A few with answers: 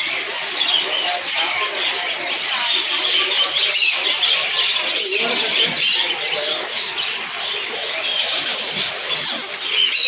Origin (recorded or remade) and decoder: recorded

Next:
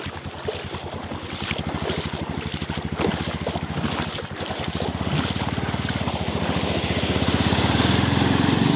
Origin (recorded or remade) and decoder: recorded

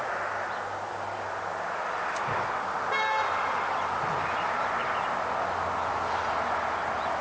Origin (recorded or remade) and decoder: recorded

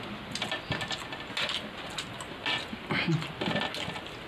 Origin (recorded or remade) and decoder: recorded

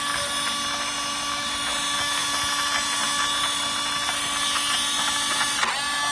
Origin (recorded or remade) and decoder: recorded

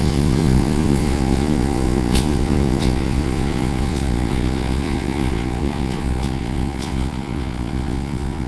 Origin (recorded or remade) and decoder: remade, vocoder, Vocos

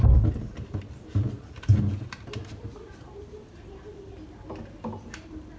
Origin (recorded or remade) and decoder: recorded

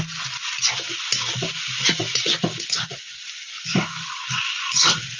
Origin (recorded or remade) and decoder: recorded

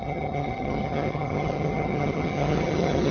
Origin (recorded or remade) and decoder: remade, vocoder, HiFi-GAN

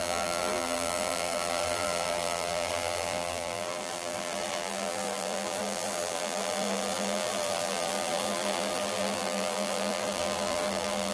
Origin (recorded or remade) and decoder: remade, vocoder, BigVGAN v2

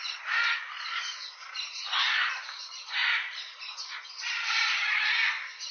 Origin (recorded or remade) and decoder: recorded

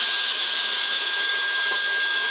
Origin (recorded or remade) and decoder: remade, autoencoder, DAC-VAE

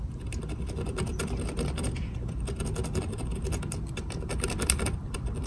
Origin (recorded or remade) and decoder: recorded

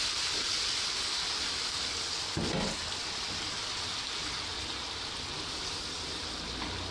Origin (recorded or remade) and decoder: recorded